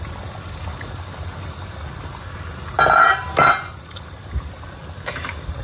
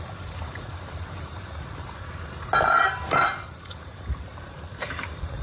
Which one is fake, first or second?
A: second